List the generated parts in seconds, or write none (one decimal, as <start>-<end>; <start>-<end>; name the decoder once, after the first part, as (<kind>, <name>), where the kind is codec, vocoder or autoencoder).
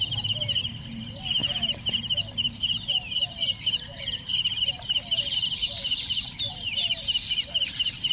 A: 0.0-8.1 (vocoder, BigVGAN v2)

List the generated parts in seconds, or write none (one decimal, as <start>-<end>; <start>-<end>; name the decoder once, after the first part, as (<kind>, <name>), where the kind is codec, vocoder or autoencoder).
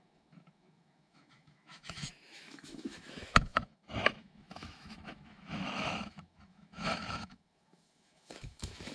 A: 0.0-8.9 (autoencoder, DAC-VAE)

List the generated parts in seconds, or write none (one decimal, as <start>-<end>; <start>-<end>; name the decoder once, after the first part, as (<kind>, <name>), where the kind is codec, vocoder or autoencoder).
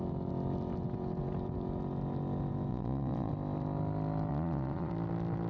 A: 2.7-3.3 (vocoder, Vocos); 4.3-4.9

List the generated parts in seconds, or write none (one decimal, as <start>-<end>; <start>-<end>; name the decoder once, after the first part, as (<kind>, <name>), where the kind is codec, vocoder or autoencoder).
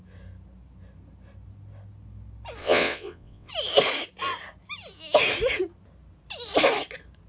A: 2.6-3.5 (vocoder, WaveNeXt)